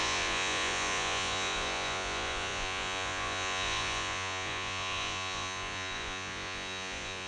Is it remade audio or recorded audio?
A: remade